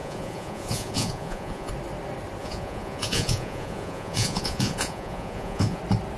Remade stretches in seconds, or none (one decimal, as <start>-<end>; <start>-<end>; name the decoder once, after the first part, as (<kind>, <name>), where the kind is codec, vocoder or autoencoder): 0.0-1.7 (vocoder, Vocos); 2.4-5.8